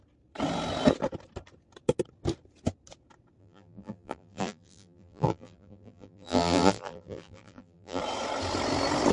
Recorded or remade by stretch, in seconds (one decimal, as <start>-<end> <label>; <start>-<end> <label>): 0.0-3.4 recorded; 3.4-8.0 remade; 8.0-9.1 recorded